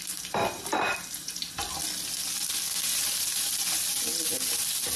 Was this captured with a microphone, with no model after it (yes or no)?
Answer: yes